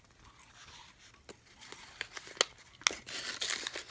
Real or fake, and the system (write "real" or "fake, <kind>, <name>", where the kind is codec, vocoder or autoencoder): real